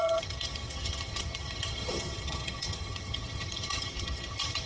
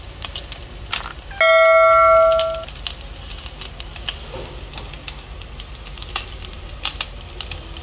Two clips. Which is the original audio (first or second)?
second